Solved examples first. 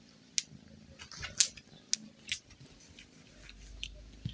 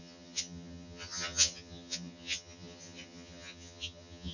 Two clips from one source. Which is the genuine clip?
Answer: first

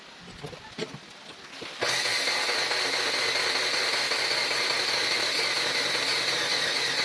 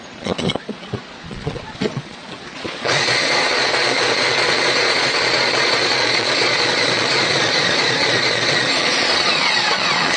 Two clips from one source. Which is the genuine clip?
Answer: first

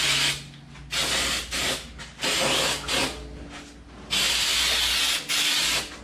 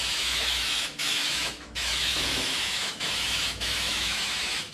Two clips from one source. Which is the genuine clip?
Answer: first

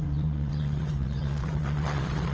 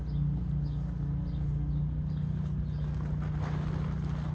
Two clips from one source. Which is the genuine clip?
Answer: second